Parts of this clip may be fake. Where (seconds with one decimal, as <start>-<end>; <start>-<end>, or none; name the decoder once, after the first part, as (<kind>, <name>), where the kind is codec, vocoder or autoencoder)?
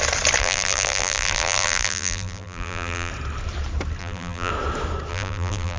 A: 0.4-3.1 (vocoder, BigVGAN v2); 4.0-4.5; 5.1-5.8